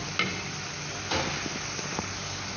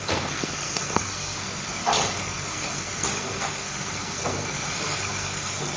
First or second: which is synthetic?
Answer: second